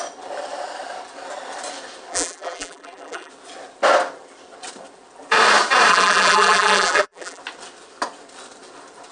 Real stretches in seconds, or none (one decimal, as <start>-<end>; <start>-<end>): 0.0-2.1; 3.3-5.9; 7.4-9.1